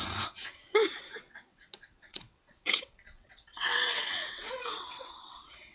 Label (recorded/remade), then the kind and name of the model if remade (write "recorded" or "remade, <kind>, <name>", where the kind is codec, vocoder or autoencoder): remade, vocoder, WaveNeXt